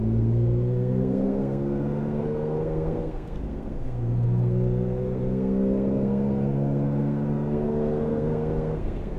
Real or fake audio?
fake